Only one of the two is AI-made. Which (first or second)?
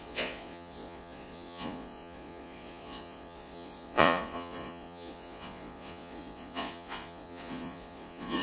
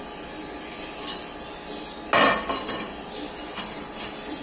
first